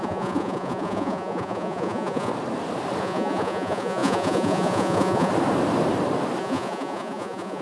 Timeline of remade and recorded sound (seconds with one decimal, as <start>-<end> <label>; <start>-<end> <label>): 0.0-2.3 remade; 2.3-3.0 recorded; 3.0-5.3 remade; 5.3-6.4 recorded; 6.4-7.6 remade